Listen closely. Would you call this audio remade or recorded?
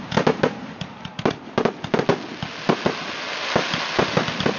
recorded